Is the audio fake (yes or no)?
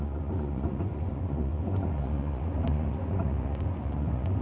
yes